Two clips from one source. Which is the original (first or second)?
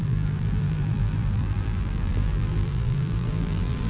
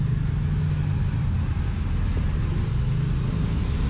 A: second